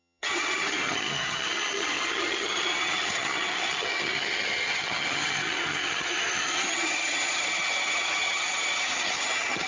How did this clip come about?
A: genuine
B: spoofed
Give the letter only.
B